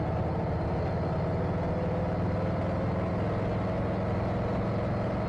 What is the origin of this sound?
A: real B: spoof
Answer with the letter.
A